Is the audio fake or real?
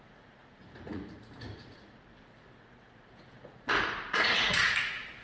fake